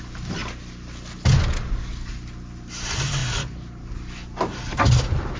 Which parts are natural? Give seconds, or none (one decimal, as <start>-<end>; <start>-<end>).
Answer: 0.0-5.4